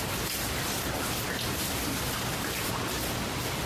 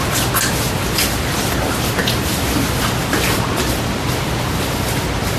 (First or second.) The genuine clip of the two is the second